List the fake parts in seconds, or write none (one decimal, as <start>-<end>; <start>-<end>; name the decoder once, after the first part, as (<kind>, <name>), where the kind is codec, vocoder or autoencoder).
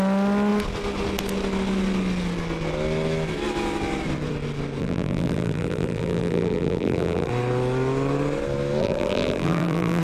4.8-7.3 (vocoder, BigVGAN v2); 8.8-10.0